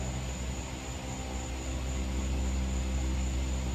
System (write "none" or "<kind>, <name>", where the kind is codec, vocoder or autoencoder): none